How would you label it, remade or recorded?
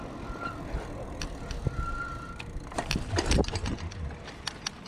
recorded